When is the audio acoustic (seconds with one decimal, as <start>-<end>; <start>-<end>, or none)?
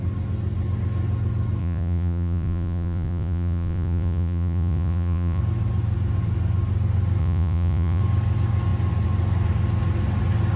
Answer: 0.0-1.6; 5.4-7.2; 8.0-10.6